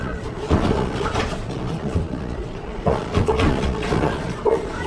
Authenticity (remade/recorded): remade